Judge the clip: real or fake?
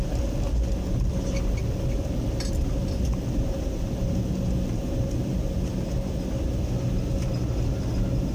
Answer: real